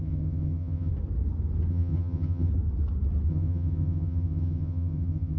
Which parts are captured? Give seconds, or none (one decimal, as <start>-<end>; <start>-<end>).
0.9-1.7; 2.5-3.3